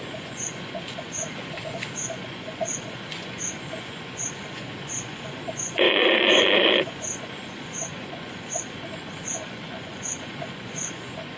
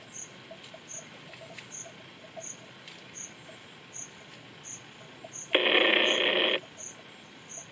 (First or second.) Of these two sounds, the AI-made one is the first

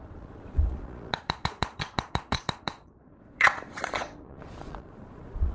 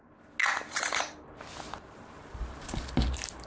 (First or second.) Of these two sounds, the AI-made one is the first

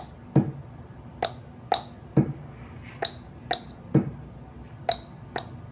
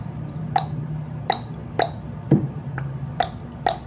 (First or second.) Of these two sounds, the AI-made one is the second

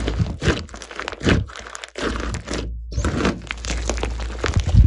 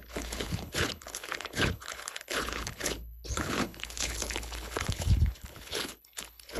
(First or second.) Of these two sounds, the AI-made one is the second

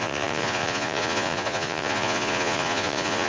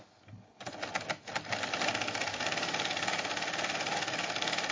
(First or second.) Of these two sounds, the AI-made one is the first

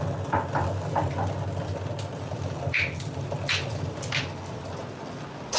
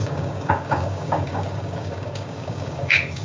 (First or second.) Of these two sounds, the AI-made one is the second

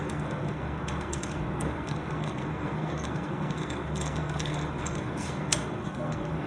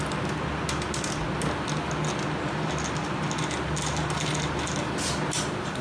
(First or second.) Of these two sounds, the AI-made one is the first